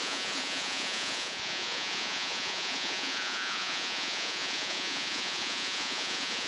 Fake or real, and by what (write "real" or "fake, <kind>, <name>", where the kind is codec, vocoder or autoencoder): fake, vocoder, Vocos